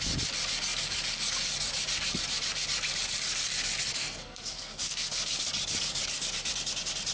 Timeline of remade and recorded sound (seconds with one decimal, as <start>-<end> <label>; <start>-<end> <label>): 0.0-3.9 recorded; 3.9-5.3 remade; 5.3-7.1 recorded